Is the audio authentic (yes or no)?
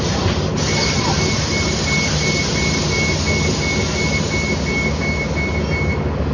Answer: yes